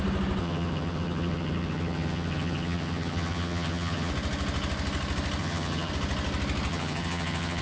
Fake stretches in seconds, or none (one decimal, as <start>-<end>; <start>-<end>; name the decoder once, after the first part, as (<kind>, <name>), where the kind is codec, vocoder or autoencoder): 0.4-4.1 (vocoder, HiFi-GAN); 5.4-5.9; 6.7-7.6